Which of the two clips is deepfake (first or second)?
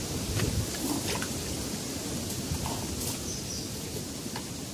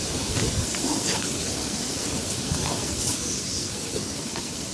second